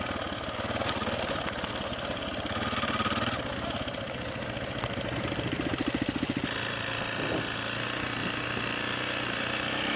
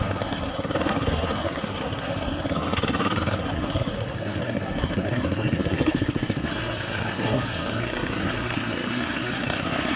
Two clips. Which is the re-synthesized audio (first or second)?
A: second